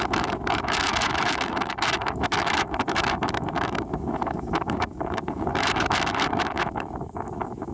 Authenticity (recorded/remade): remade